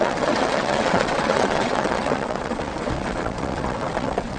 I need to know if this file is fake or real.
fake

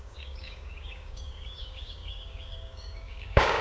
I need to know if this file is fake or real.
fake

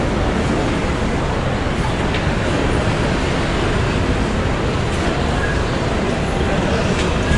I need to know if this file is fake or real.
real